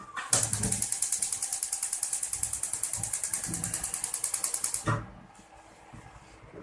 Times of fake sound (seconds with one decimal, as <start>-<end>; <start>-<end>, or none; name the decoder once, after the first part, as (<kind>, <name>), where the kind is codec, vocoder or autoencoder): none